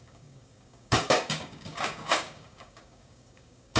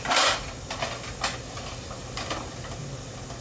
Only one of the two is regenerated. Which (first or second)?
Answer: first